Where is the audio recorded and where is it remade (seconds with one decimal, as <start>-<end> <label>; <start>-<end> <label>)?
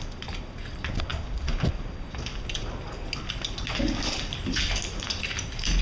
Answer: 0.0-5.8 recorded